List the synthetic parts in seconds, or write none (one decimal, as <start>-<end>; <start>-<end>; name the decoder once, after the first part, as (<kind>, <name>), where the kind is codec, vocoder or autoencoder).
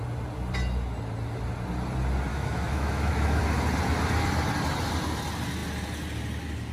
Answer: 2.3-3.4 (autoencoder, DAC-VAE)